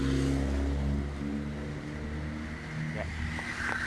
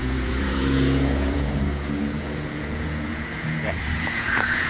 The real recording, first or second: first